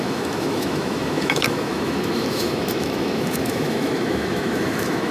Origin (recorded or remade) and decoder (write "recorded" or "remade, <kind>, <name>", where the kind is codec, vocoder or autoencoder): remade, autoencoder, DAC-VAE